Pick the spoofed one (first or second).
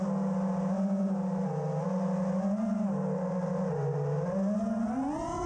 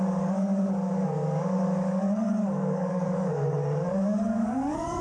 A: second